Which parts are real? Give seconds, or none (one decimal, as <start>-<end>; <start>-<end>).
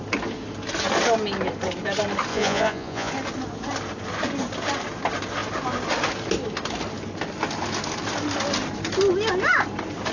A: 0.0-2.3; 3.1-10.1